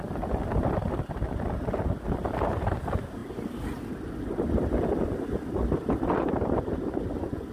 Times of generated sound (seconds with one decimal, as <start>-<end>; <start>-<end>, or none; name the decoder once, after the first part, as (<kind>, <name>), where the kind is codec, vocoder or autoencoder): none